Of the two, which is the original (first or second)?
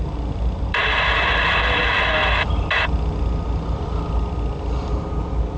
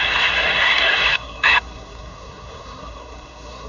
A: first